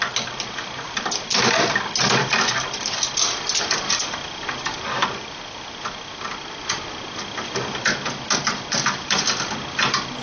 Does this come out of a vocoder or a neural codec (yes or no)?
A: no